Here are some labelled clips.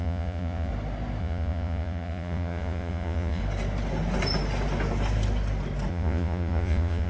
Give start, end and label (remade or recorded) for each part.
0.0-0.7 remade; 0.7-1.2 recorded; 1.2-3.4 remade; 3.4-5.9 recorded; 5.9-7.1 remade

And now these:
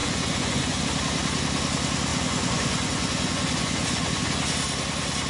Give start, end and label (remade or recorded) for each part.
0.0-0.8 remade; 0.8-2.1 recorded; 2.1-4.3 remade; 4.3-5.3 recorded

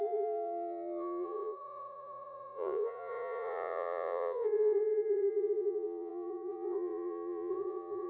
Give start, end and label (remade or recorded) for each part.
0.0-8.1 remade

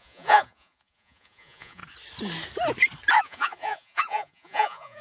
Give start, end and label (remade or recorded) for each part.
0.0-1.8 remade; 1.8-3.2 recorded; 3.2-5.0 remade

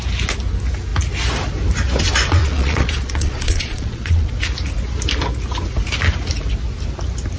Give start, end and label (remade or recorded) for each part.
0.0-2.4 recorded; 2.4-4.3 remade; 4.3-7.4 recorded

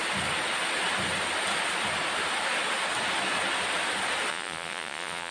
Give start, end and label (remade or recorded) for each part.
0.0-4.3 recorded; 4.3-5.3 remade

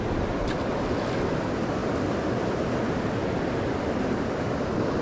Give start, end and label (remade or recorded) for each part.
0.0-5.0 recorded